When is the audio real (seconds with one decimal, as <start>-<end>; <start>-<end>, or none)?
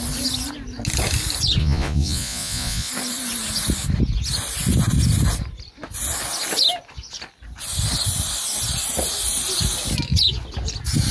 0.0-1.6; 2.9-11.1